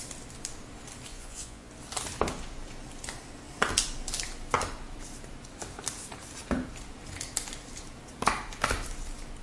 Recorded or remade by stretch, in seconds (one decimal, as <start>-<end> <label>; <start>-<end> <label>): 0.0-1.1 recorded; 1.1-1.7 remade; 1.7-9.4 recorded

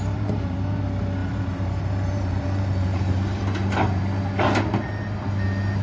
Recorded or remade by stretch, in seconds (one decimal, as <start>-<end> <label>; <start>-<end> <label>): 0.0-1.2 recorded; 1.2-3.4 remade; 3.4-5.8 recorded

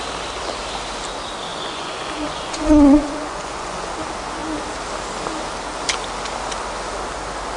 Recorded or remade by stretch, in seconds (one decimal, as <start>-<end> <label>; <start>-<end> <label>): 0.0-1.5 recorded; 1.5-3.9 remade; 3.9-7.6 recorded

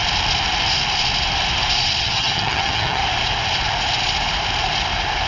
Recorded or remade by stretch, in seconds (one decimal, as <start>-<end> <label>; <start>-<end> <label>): 0.0-2.0 recorded; 2.0-3.0 remade; 3.0-5.3 recorded

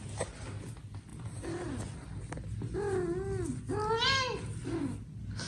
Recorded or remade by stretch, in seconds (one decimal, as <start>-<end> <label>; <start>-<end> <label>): 0.0-5.5 recorded

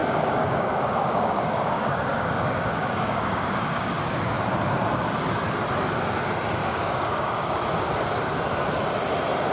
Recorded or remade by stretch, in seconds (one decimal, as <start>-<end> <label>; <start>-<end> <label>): 0.0-4.0 remade; 4.0-6.6 recorded; 6.6-7.6 remade; 7.6-9.5 recorded

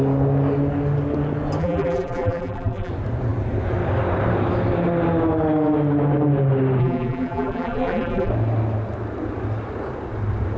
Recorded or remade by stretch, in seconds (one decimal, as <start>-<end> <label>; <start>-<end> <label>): 0.0-1.6 recorded; 1.6-2.9 remade; 2.9-6.8 recorded; 6.8-8.3 remade; 8.3-10.6 recorded

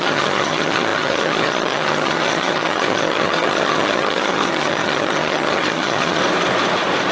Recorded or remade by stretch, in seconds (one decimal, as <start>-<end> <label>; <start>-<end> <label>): 0.0-6.2 remade; 6.2-7.1 recorded